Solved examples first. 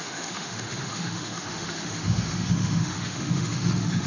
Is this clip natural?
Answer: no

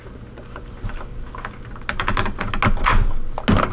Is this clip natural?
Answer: yes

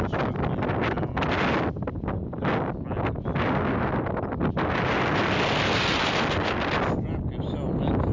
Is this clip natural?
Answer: yes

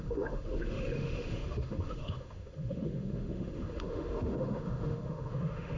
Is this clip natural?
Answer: no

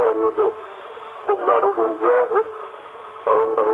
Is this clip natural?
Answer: no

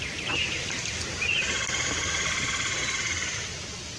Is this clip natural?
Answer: yes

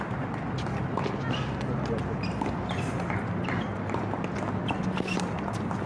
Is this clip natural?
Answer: yes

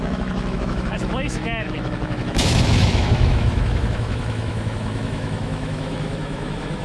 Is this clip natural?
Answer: no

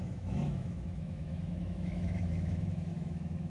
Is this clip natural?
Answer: no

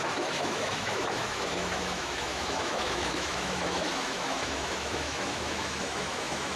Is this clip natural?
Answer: no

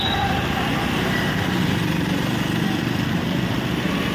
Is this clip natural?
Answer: yes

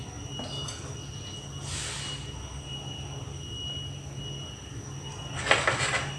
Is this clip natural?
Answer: yes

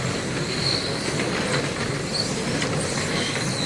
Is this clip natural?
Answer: yes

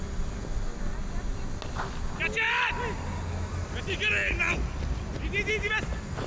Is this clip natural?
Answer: yes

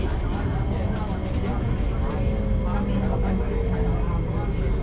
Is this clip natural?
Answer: yes